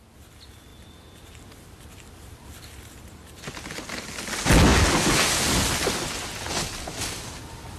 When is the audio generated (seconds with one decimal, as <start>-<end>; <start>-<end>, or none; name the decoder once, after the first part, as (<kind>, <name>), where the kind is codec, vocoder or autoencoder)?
0.7-4.2 (vocoder, BigVGAN v2)

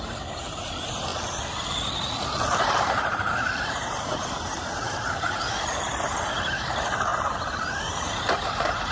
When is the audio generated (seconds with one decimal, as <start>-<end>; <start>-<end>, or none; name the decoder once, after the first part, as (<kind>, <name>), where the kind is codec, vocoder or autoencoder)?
0.0-1.1 (vocoder, BigVGAN v2); 2.6-8.9